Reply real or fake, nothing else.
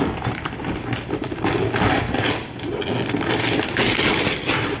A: real